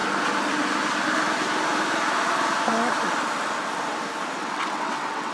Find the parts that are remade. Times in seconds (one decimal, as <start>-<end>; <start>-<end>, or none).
4.4-5.3